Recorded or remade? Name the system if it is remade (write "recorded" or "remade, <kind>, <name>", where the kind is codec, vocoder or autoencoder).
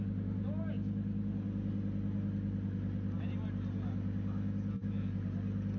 recorded